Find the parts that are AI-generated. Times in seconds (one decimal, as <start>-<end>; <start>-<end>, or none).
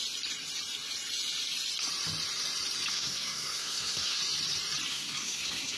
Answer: 2.9-4.2; 4.9-5.8